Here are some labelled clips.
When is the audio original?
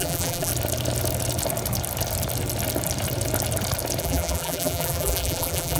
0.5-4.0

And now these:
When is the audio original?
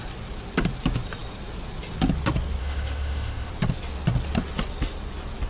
0.0-2.6; 3.5-5.5